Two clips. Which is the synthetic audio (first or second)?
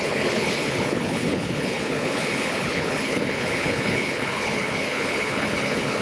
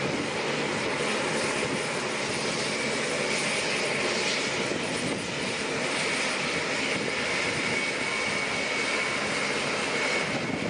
first